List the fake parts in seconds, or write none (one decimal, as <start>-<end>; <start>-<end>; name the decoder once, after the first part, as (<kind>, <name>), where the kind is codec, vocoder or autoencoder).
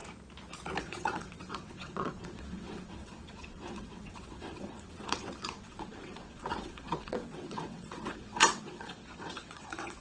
0.8-10.0 (vocoder, WaveNeXt)